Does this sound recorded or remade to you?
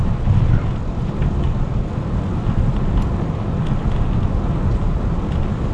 recorded